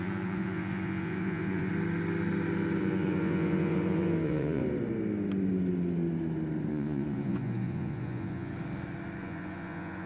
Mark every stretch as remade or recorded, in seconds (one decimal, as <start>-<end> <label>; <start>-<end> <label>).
0.0-1.7 remade; 1.7-2.8 recorded; 2.8-4.6 remade; 4.6-6.7 recorded; 6.7-8.5 remade; 8.5-9.2 recorded; 9.2-10.1 remade